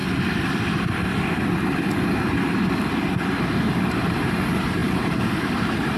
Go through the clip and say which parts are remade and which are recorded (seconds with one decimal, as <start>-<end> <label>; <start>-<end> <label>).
0.0-3.6 recorded; 3.6-6.0 remade